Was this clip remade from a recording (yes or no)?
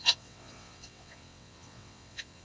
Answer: yes